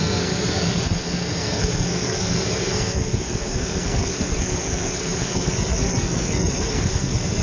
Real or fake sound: fake